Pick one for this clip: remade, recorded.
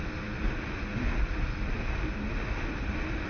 recorded